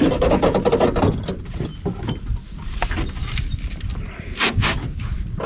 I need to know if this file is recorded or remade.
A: recorded